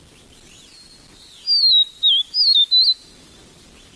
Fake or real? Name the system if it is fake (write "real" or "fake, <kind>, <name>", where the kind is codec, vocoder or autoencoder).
real